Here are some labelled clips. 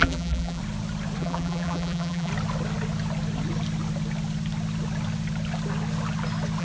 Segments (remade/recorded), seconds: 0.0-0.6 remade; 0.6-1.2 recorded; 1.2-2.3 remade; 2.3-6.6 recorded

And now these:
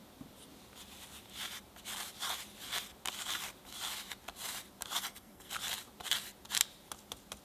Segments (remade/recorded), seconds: 0.0-5.0 recorded; 5.0-5.5 remade; 5.5-7.4 recorded

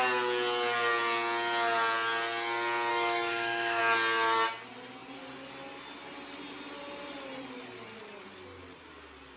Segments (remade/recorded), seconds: 0.0-2.9 recorded; 2.9-3.8 remade; 3.8-9.4 recorded

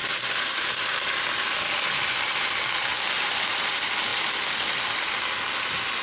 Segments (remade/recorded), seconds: 0.0-6.0 recorded

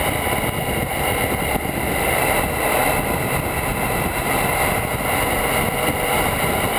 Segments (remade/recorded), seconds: 0.0-6.8 recorded